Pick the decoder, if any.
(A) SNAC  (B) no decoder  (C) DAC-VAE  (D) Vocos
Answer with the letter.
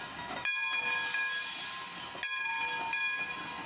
B